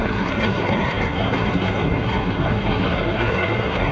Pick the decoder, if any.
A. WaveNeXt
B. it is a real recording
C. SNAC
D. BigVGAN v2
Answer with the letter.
C